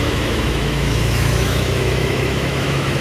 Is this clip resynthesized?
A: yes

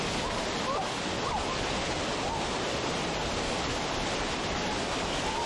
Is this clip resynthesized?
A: no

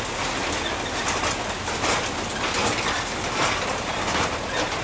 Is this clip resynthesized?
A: no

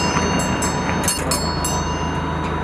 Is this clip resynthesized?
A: no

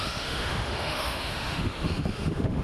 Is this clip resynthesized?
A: yes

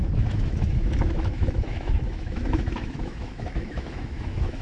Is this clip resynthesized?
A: yes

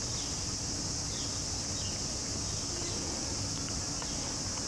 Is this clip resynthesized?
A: no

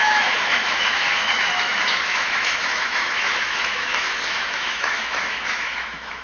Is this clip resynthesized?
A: yes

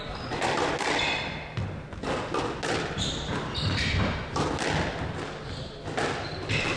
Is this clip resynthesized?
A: no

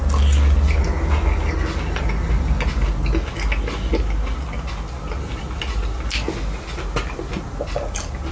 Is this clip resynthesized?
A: no